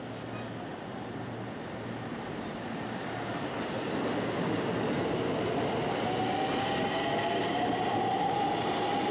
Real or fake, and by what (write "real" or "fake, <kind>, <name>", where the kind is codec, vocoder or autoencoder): real